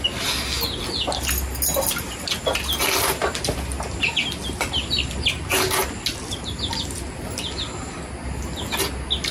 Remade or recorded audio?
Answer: recorded